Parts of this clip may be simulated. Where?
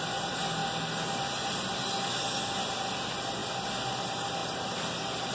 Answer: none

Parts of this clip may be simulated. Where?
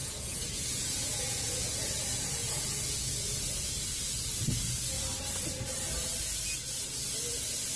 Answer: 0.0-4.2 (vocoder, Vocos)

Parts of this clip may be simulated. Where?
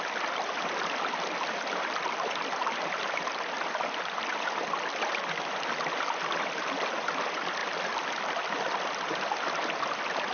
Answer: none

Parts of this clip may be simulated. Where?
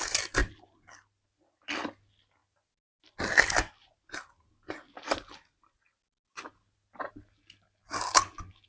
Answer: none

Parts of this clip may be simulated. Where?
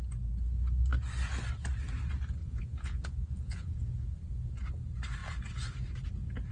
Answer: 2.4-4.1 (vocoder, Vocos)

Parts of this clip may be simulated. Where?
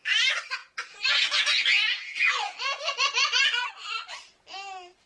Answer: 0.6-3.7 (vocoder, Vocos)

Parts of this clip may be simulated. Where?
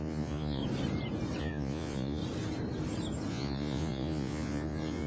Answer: 0.0-0.6 (vocoder, Vocos); 1.4-2.2; 3.3-5.1